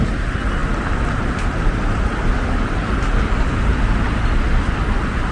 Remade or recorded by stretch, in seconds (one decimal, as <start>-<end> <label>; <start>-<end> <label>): 0.0-5.3 recorded